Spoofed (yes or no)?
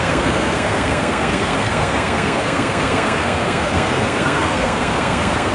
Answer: yes